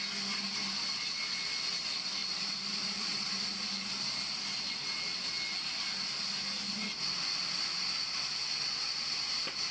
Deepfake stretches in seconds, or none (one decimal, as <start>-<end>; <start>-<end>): 2.2-3.3